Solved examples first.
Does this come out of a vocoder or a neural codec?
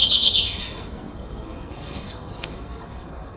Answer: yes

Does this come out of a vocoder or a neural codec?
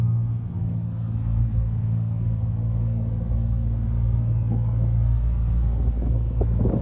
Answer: yes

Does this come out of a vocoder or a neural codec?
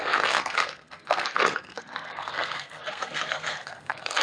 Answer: yes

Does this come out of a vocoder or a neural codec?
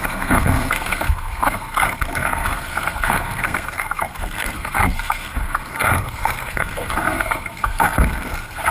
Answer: yes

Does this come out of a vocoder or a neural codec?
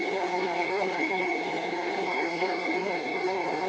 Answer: yes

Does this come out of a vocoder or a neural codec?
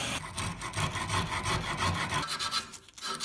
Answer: no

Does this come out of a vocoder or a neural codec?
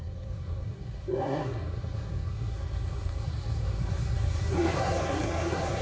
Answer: yes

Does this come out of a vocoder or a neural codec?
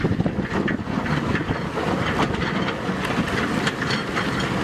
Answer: no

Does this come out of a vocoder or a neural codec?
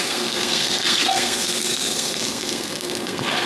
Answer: yes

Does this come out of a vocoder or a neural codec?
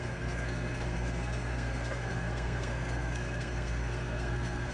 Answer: yes